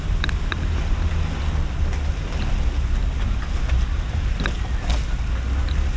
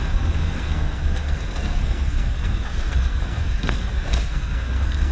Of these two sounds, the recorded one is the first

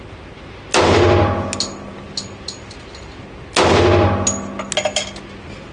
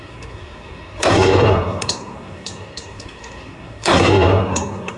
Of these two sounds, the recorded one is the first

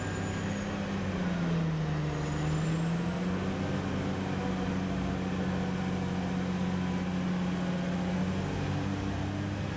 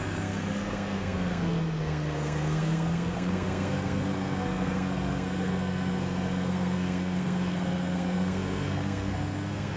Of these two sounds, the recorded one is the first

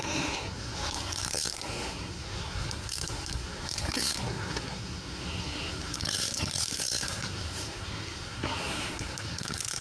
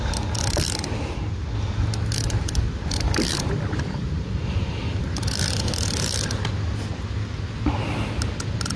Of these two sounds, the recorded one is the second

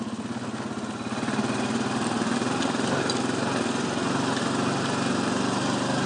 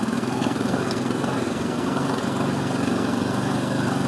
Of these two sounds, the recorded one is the first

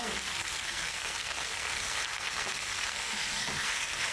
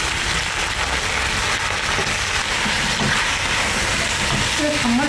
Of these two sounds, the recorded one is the second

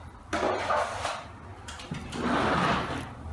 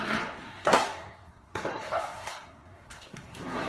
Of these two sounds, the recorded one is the first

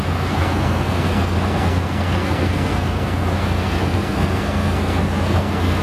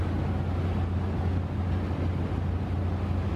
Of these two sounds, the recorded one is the second